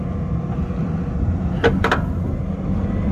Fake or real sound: real